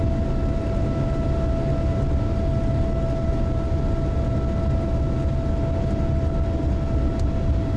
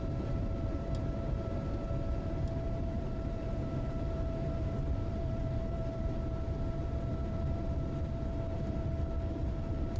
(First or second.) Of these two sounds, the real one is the first